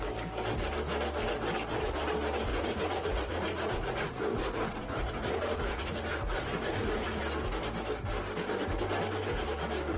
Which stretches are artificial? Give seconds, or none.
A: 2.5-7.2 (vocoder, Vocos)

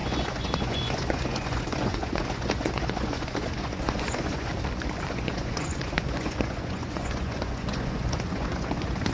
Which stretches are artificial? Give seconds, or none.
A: 0.0-4.5 (vocoder, Vocos); 5.1-9.1

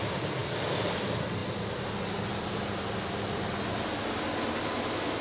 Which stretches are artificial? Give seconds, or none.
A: none

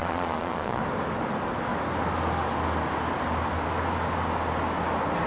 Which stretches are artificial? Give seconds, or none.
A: 0.0-0.8 (vocoder, Vocos)

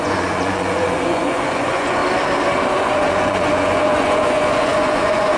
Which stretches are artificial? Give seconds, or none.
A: 0.0-2.0 (vocoder, Vocos); 2.7-5.4

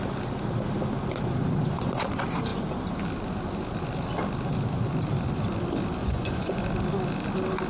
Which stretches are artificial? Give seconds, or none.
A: 6.0-6.6 (vocoder, Vocos)

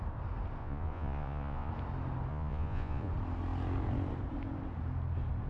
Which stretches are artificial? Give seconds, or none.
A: 0.6-1.7 (vocoder, Vocos); 2.3-3.1